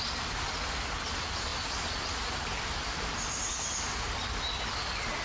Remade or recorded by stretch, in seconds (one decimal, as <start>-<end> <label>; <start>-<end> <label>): 0.0-5.2 recorded